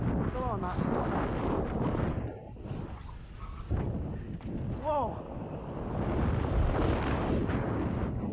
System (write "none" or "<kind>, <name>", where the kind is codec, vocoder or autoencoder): none